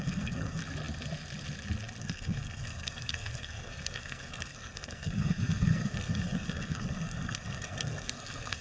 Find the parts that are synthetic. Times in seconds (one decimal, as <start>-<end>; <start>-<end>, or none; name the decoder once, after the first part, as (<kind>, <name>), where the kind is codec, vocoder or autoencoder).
0.0-0.6 (codec, SNAC); 2.0-8.6